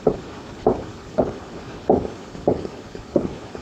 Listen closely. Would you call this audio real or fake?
fake